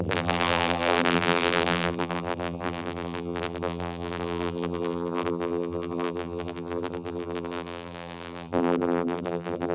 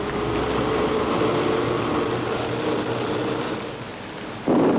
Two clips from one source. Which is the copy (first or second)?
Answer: first